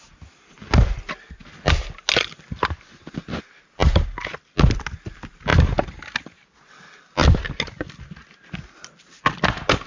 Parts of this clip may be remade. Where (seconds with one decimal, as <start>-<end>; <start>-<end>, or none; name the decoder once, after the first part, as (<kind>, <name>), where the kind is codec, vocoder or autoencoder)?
none